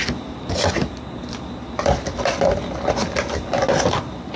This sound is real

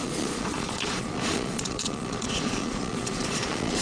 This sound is fake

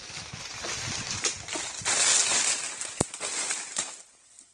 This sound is real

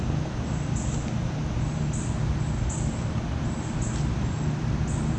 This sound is real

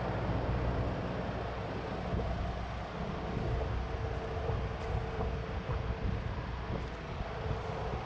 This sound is real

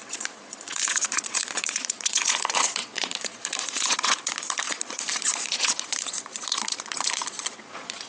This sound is fake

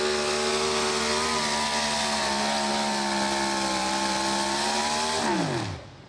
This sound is real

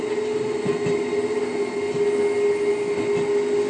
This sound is real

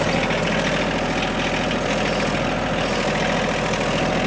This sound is real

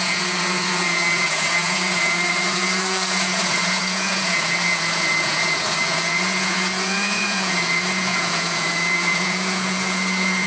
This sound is fake